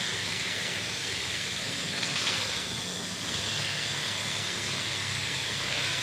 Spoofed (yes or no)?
yes